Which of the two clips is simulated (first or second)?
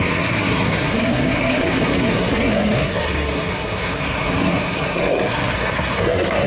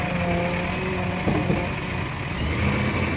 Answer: first